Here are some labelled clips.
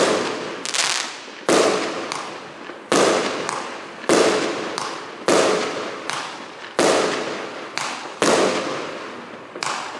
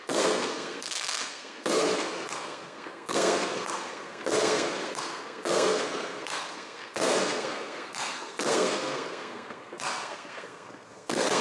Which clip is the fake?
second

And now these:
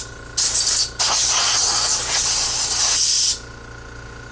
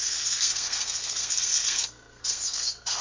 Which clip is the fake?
second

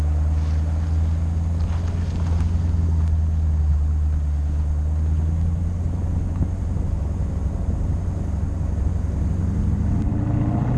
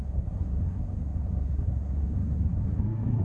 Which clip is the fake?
second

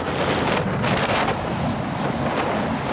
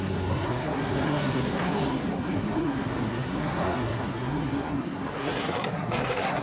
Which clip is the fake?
second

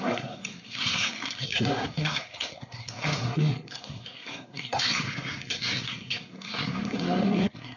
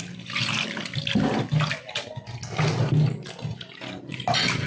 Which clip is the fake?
first